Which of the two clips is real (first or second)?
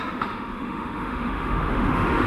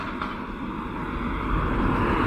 second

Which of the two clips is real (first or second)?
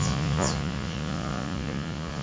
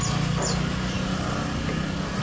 second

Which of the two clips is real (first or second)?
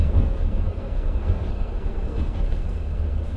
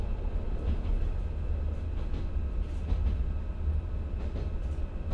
second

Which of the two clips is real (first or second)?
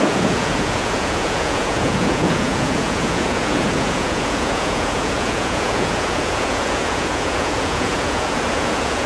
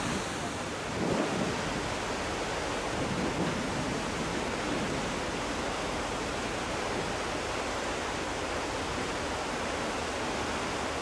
second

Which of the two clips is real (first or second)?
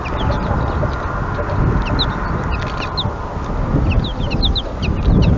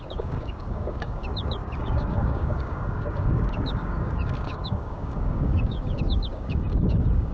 first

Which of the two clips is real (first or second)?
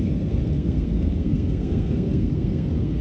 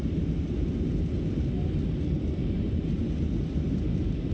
second